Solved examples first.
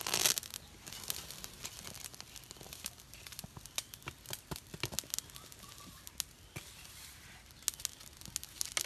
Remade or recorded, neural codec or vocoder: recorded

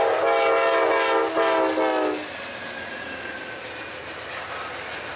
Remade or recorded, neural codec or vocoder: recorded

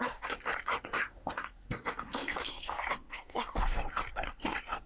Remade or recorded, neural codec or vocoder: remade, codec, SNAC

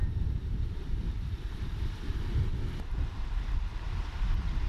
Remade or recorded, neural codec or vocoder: remade, vocoder, BigVGAN v2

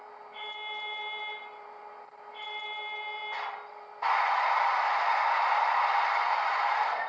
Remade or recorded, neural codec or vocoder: remade, vocoder, BigVGAN v2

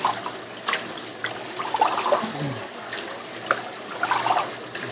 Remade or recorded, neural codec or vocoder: recorded